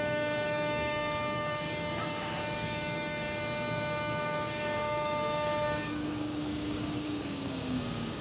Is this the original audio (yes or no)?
no